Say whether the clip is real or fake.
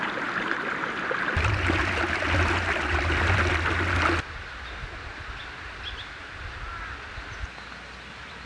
real